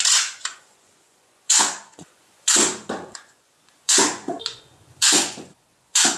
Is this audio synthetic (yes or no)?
yes